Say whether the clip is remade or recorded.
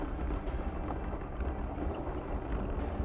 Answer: recorded